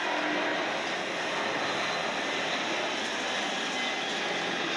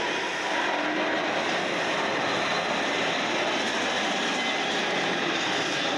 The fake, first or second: second